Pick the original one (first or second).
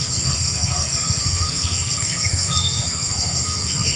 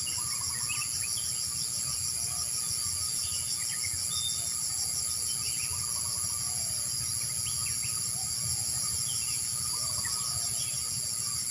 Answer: second